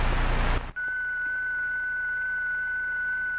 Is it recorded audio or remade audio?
recorded